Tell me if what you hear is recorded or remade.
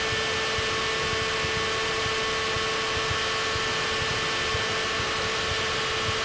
recorded